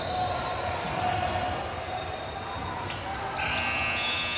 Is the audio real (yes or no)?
yes